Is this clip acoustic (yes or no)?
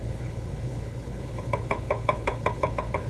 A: no